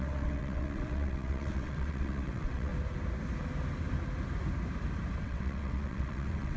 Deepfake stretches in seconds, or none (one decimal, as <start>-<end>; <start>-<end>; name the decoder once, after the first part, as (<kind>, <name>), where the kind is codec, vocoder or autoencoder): 0.0-2.7 (vocoder, WaveNeXt); 5.2-6.6